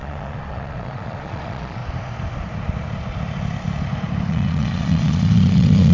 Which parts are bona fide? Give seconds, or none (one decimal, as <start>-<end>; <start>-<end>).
1.8-4.3